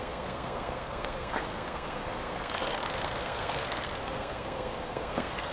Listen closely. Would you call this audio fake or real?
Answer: fake